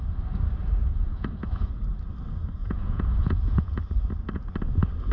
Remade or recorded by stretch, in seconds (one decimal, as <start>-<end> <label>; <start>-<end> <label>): 0.0-0.8 recorded; 0.8-1.7 remade; 1.7-2.6 recorded; 2.6-3.8 remade; 3.8-5.1 recorded

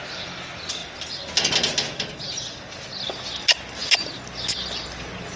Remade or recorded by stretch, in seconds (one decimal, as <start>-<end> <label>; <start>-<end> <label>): 0.0-5.4 recorded